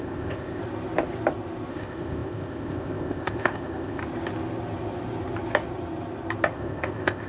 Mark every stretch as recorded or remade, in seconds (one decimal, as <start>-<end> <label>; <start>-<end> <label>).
0.0-0.6 remade; 0.6-1.7 recorded; 1.7-4.0 remade; 4.0-6.5 recorded; 6.5-7.3 remade